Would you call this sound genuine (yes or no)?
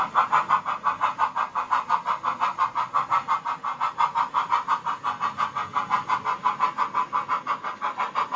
yes